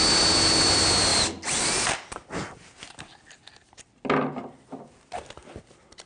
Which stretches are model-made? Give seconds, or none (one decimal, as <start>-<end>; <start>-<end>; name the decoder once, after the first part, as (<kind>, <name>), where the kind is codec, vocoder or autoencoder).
none